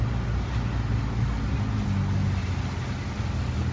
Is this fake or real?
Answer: real